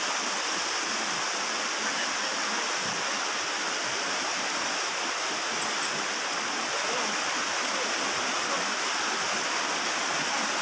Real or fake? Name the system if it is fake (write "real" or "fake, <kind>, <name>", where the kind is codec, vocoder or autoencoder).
real